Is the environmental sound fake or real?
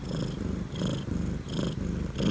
real